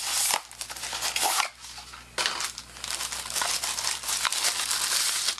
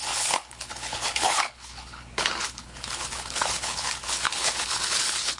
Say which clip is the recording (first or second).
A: first